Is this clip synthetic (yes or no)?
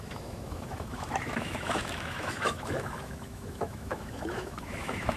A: yes